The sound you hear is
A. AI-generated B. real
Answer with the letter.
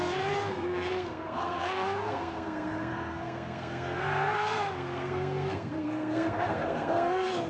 A